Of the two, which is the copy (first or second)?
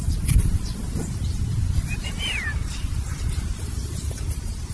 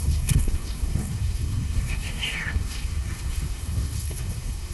second